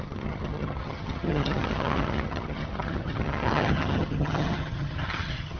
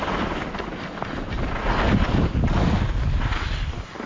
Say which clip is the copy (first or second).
first